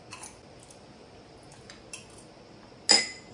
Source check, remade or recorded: recorded